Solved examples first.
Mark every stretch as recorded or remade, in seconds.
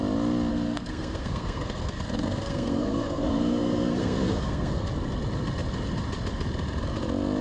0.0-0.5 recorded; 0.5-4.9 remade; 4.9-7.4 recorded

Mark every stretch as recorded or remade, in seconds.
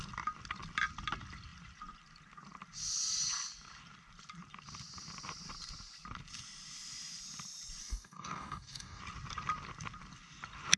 0.0-7.8 recorded; 7.8-9.0 remade; 9.0-10.8 recorded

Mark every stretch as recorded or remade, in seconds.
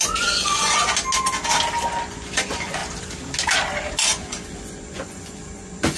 0.0-0.8 remade; 0.8-2.1 recorded; 2.1-2.8 remade; 2.8-3.9 recorded; 3.9-6.0 remade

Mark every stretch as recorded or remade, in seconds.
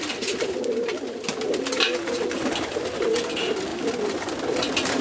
0.0-5.0 recorded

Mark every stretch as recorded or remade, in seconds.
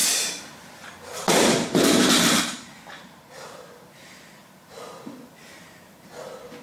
0.0-6.6 recorded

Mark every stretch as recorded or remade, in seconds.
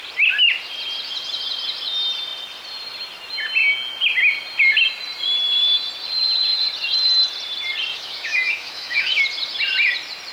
0.0-7.9 recorded; 7.9-9.2 remade; 9.2-10.3 recorded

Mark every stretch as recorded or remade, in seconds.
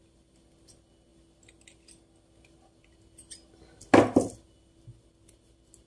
0.0-5.9 recorded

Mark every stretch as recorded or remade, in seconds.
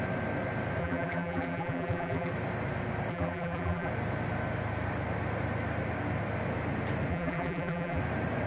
0.0-0.8 recorded; 0.8-2.3 remade; 2.3-3.1 recorded; 3.1-3.9 remade; 3.9-7.1 recorded; 7.1-8.0 remade; 8.0-8.5 recorded